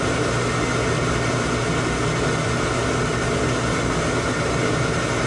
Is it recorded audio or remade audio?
recorded